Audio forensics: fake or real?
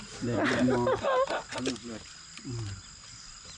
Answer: real